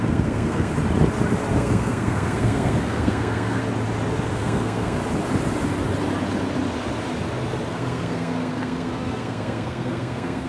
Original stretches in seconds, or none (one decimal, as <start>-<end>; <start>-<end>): 0.7-1.5; 3.6-4.3; 5.0-7.7

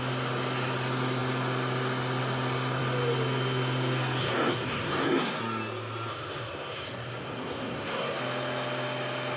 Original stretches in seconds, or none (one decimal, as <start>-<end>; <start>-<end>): 0.0-4.2; 5.4-6.1; 8.2-9.4

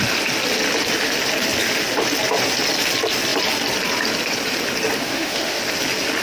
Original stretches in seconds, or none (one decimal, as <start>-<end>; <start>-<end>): 0.0-5.0; 5.6-6.2

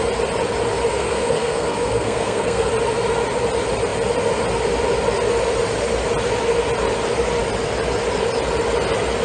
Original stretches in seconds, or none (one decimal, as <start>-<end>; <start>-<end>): 0.0-0.9; 2.7-9.2

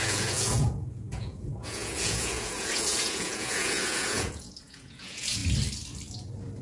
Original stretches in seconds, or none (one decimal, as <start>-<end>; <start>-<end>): 5.4-6.6

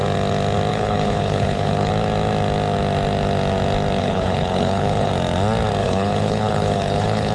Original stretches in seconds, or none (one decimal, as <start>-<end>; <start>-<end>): 0.0-0.7; 1.9-4.0; 5.1-5.8

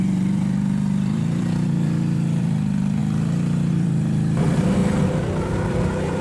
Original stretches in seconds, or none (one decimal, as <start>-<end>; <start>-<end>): 3.0-3.7; 4.8-5.4

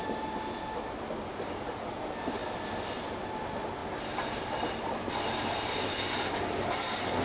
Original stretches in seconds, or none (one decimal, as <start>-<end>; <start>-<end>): 0.0-7.2